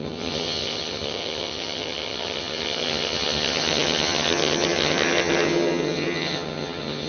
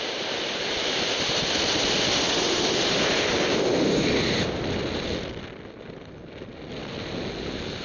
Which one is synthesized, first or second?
first